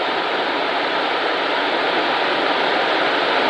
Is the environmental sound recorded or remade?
remade